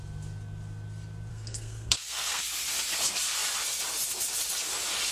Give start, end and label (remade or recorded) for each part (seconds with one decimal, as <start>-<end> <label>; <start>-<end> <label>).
0.0-1.3 recorded; 1.3-2.4 remade; 2.4-5.1 recorded